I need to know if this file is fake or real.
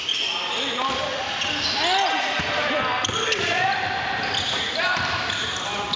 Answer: real